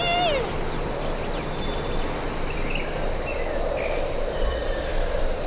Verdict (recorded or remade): recorded